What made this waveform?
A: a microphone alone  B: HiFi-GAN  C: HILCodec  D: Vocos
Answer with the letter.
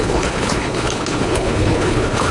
C